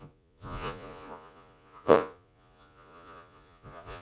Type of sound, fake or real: fake